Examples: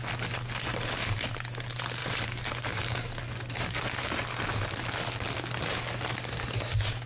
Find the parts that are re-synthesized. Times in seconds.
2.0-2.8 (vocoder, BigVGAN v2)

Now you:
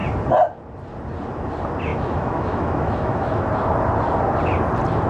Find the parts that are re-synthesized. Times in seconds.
1.9-3.5 (autoencoder, DAC-VAE)

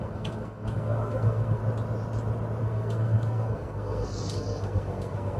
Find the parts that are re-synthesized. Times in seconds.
0.0-1.6 (codec, SNAC); 2.6-5.4

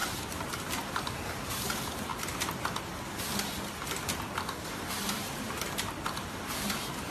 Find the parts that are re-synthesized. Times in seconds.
none

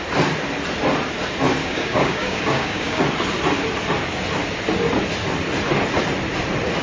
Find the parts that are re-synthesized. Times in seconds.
1.6-3.0 (codec, DAC)